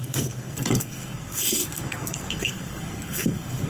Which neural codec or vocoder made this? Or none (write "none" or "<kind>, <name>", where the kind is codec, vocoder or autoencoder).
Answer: codec, SNAC